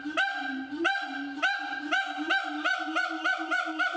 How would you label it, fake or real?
fake